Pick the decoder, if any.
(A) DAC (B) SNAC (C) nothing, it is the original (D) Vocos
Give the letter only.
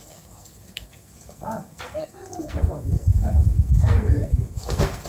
B